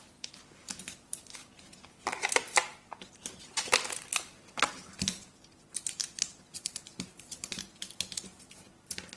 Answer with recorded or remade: remade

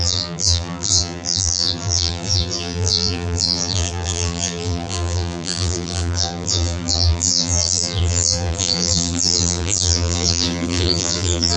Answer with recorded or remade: remade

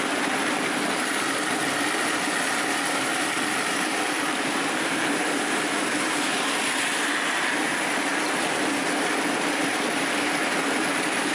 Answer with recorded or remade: recorded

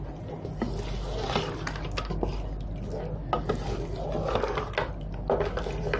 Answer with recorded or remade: recorded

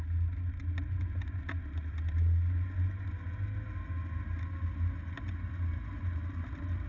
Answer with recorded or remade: recorded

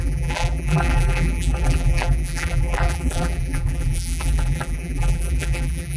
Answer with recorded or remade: remade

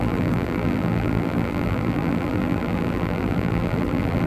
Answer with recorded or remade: remade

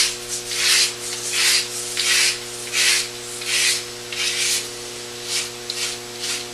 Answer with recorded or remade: recorded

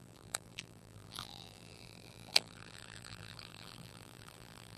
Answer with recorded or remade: remade